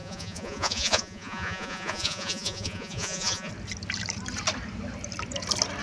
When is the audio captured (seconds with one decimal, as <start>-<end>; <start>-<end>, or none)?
3.5-5.8